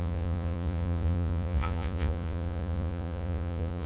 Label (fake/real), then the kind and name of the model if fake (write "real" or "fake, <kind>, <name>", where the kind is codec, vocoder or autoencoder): fake, vocoder, Vocos